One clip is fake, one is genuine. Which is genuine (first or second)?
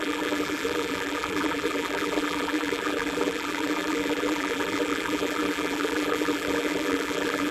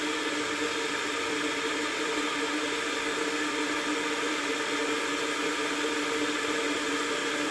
second